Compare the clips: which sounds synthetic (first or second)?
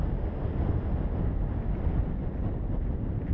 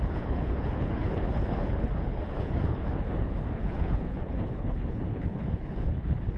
second